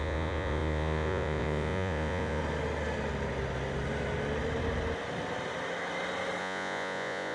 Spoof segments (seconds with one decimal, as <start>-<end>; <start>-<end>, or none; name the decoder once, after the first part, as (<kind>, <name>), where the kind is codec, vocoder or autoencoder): 0.0-2.4 (vocoder, Vocos); 6.4-7.3

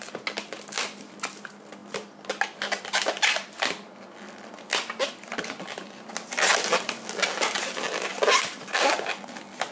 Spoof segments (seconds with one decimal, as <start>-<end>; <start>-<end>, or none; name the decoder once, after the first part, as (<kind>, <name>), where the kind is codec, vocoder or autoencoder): none

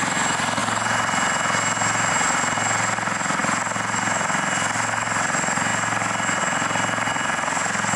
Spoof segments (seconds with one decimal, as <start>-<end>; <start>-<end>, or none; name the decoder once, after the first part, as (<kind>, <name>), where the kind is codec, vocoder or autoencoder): none

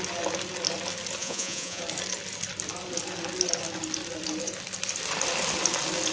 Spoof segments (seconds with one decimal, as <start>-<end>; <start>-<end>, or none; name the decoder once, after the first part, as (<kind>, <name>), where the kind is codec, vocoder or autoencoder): 1.2-1.8 (vocoder, Vocos)

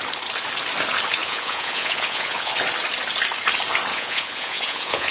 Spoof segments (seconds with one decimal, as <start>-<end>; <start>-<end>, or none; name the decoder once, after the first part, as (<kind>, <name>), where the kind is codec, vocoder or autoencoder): 1.2-2.5 (vocoder, Vocos); 3.9-5.1

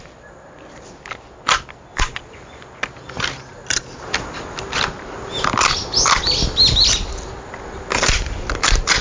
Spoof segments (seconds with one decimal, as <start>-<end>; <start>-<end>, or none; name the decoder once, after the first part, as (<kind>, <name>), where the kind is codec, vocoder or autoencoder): 1.9-2.8 (vocoder, Vocos)

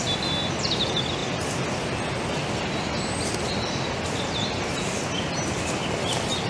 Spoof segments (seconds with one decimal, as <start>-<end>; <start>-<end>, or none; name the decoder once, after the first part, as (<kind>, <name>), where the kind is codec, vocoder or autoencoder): none